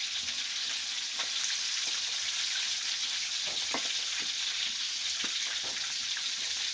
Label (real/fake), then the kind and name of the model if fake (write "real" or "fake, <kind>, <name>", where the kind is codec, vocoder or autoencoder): real